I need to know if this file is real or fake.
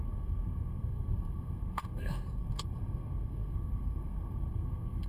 fake